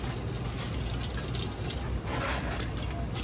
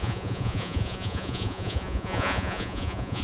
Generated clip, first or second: second